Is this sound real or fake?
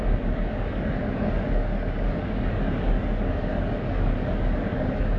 fake